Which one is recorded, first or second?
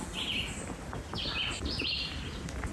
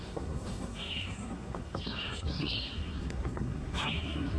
first